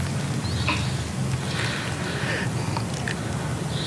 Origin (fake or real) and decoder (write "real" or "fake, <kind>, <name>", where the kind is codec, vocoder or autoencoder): real